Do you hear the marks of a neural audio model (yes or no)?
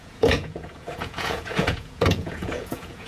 yes